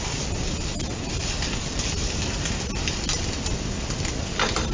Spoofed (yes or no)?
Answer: no